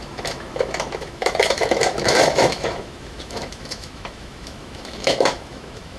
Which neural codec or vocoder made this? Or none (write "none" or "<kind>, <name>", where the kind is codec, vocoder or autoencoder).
autoencoder, DAC-VAE